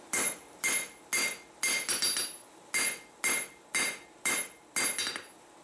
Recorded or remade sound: recorded